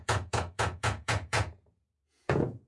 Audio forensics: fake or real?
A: fake